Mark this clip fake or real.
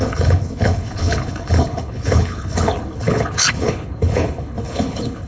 fake